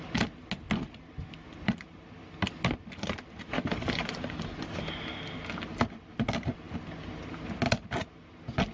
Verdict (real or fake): real